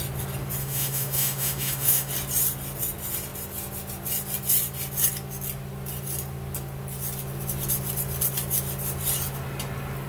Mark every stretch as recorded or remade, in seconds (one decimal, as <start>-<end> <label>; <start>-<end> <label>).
0.0-0.6 recorded; 0.6-2.1 remade; 2.1-10.1 recorded